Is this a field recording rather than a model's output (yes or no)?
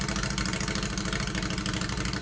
yes